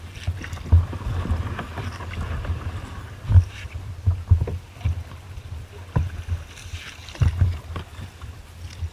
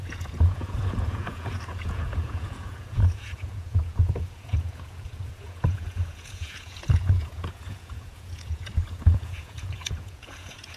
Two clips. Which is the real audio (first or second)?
first